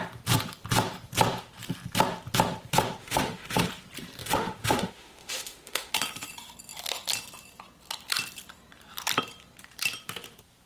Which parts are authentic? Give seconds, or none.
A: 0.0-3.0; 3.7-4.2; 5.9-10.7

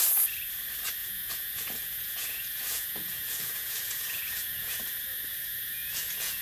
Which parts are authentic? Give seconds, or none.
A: 0.0-1.0; 4.8-5.3

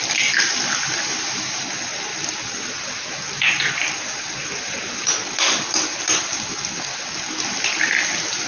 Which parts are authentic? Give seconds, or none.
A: 0.0-8.5

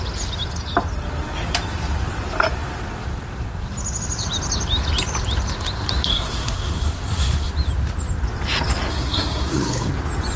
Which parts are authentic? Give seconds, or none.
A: 0.0-6.1; 7.5-8.9; 9.9-10.4